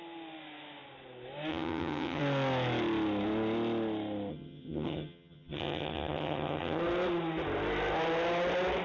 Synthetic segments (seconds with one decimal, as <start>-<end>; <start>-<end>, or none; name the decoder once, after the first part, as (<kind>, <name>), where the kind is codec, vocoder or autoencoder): 1.5-2.2 (vocoder, HiFi-GAN); 4.3-6.8